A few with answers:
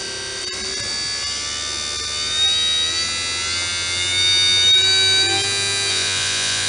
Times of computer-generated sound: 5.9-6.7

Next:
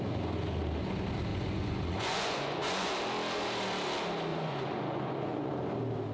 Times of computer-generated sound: 1.3-2.9; 4.3-5.5

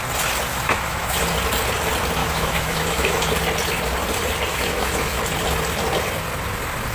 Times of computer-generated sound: 0.5-1.2; 2.2-3.3; 4.5-5.2

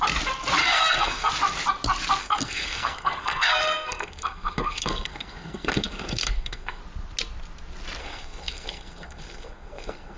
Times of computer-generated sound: 0.6-1.3; 2.2-6.8; 8.0-10.2

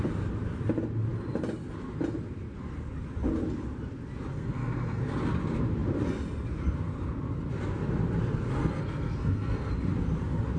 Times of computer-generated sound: 4.3-5.0; 8.6-9.7

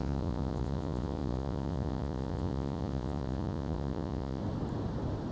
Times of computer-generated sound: 0.0-4.4